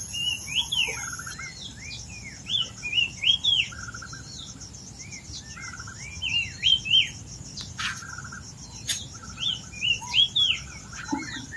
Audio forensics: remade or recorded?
recorded